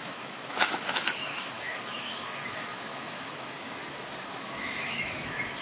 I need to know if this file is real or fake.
fake